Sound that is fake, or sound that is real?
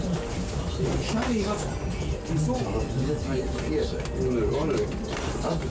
real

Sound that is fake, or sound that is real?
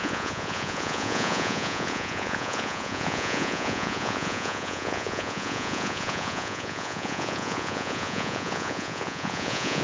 fake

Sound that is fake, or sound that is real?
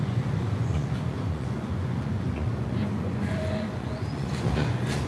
fake